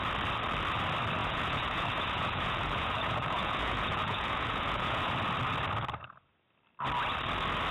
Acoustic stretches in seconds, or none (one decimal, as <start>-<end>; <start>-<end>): 0.0-1.2; 5.1-7.7